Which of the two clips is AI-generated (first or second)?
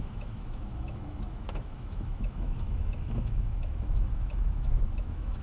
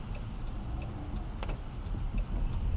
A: first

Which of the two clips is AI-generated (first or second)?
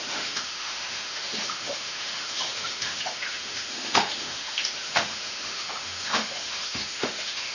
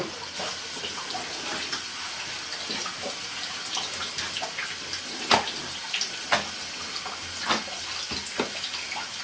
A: first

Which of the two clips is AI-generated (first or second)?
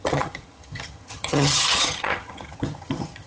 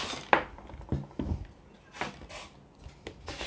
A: first